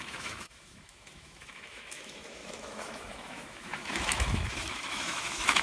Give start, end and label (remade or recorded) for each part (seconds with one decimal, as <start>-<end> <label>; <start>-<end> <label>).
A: 0.0-5.6 remade